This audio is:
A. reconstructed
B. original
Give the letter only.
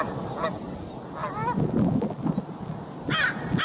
B